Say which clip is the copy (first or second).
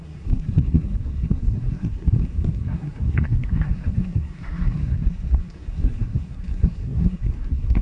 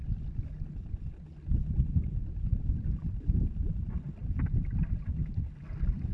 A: first